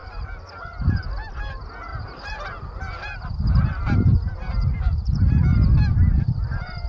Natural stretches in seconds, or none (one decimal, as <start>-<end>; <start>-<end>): 1.0-1.9; 5.2-6.9